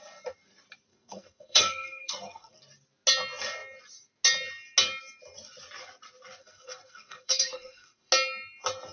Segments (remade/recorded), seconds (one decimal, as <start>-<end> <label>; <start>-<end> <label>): 0.0-0.9 recorded; 0.9-2.6 remade; 2.6-6.4 recorded; 6.4-8.1 remade; 8.1-8.9 recorded